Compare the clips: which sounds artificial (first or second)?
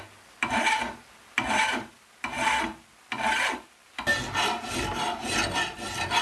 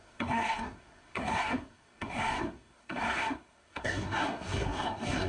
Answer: second